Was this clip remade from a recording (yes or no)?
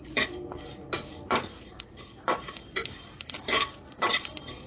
yes